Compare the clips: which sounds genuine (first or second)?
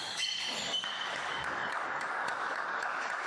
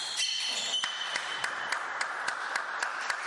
second